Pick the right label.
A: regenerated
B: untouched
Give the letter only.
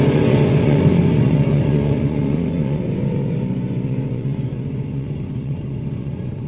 A